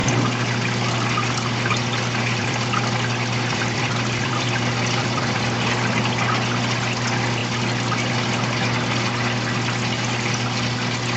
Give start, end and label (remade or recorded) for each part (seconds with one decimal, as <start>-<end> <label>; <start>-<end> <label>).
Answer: 0.0-2.4 recorded; 2.4-5.4 remade; 5.4-7.4 recorded; 7.4-8.1 remade; 8.1-11.2 recorded